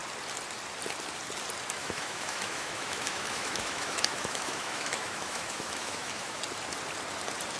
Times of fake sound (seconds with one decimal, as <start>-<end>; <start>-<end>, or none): 1.8-6.4